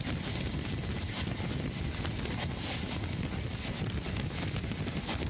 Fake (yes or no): no